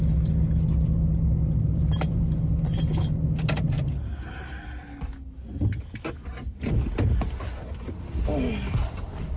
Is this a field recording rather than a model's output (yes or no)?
yes